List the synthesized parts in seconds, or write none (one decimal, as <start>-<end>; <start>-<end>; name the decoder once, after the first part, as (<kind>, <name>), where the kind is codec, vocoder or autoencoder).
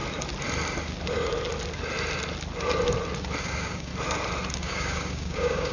3.4-3.9 (codec, DAC); 4.5-5.7